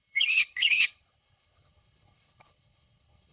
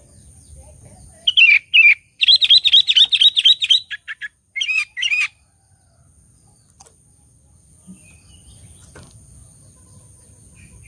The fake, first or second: first